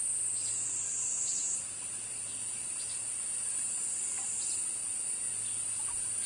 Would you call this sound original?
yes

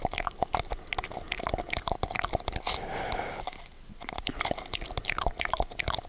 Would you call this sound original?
yes